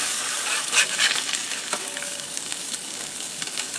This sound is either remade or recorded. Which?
remade